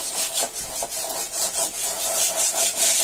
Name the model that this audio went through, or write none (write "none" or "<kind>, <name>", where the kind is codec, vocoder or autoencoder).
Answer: vocoder, Vocos